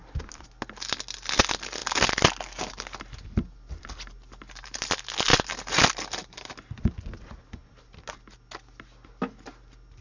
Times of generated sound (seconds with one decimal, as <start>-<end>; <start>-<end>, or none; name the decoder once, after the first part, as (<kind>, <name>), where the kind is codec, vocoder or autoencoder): none